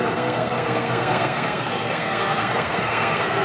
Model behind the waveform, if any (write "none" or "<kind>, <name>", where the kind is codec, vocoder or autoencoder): codec, SNAC